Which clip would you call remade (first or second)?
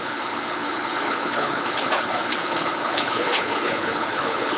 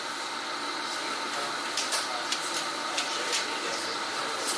first